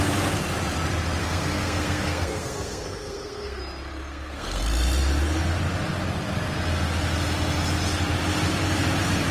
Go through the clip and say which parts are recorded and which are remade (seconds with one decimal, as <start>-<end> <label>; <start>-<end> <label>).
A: 0.0-1.2 recorded; 1.2-3.6 remade; 3.6-4.1 recorded; 4.1-4.6 remade; 4.6-9.3 recorded